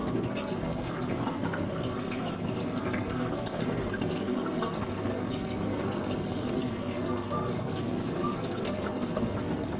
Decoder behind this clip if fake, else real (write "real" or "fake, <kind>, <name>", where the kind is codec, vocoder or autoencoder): fake, codec, SNAC